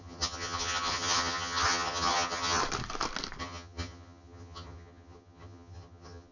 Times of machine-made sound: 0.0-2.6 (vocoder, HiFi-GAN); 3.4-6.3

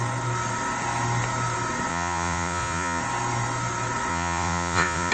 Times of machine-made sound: 1.9-3.0 (vocoder, Vocos); 4.1-5.1

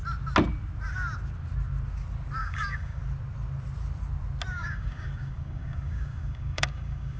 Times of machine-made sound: 2.4-3.0 (codec, DAC); 4.5-7.2

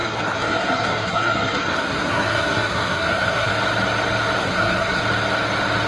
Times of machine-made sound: 0.0-3.5 (codec, SNAC); 4.4-5.0